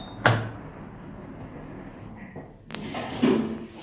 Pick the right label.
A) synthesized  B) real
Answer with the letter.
B